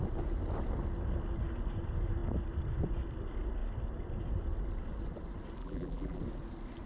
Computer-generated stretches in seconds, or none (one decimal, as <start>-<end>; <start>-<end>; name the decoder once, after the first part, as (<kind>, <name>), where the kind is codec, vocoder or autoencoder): 5.6-6.2 (vocoder, BigVGAN v2)